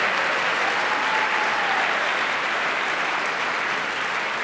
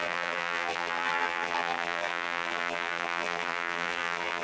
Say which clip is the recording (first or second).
first